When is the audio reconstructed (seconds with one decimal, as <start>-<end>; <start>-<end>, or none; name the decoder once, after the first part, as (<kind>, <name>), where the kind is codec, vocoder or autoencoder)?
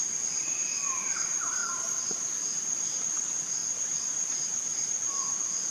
none